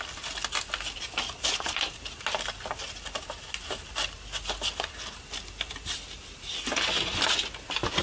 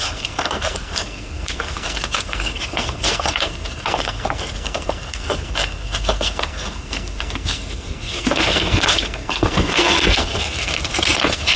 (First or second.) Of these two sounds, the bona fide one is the first